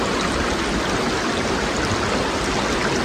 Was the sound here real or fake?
real